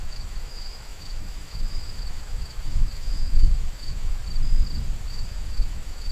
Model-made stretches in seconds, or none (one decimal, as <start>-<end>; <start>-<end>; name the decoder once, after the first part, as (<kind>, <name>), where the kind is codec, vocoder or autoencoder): 0.0-4.2 (autoencoder, DAC-VAE); 5.1-6.1